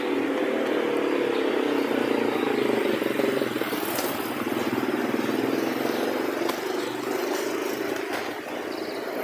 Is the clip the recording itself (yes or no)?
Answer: yes